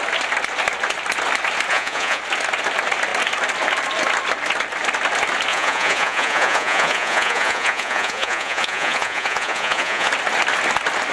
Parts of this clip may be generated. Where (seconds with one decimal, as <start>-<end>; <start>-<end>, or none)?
1.7-2.2; 5.5-10.1